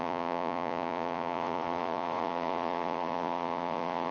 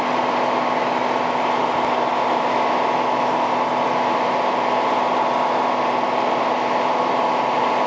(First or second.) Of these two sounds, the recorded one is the second